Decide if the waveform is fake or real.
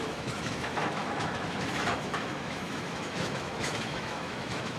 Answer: fake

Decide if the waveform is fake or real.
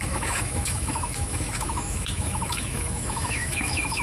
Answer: fake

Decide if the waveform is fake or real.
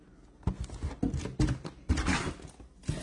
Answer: real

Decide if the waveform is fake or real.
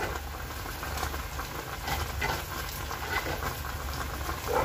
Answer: real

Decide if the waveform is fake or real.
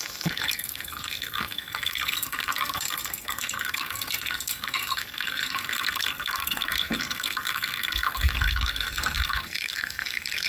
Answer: fake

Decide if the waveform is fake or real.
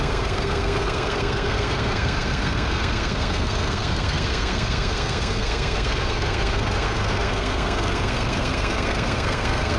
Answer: fake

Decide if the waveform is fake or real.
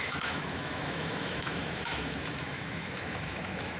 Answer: fake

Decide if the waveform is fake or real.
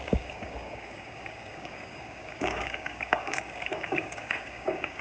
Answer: fake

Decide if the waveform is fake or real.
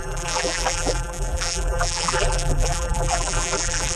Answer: fake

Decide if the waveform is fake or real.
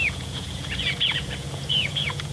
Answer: fake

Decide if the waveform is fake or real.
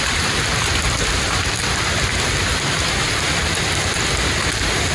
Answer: fake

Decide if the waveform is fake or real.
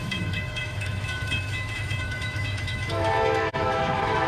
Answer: fake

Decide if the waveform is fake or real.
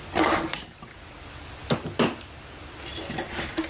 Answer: real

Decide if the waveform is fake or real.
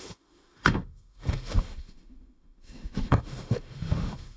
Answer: fake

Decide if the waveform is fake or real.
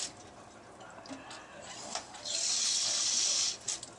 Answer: fake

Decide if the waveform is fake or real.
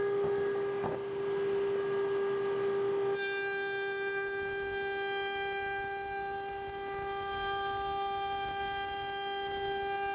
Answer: real